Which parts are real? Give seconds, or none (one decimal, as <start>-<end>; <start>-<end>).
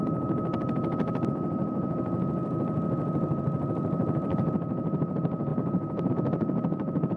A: 0.0-7.2